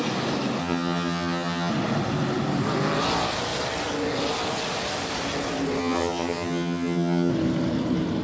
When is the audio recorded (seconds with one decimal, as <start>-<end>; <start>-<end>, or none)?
0.0-0.6; 1.7-5.8; 7.3-8.2